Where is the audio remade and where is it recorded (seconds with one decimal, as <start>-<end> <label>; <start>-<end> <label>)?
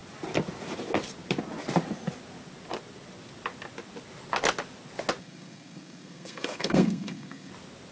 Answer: 0.0-5.2 recorded; 5.2-7.5 remade; 7.5-7.9 recorded